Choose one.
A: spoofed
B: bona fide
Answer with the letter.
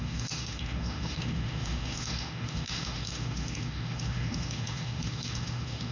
A